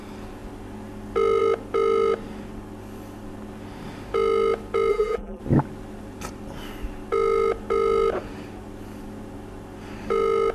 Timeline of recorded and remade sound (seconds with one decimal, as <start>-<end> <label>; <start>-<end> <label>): 0.0-4.9 recorded; 4.9-5.4 remade; 5.4-10.5 recorded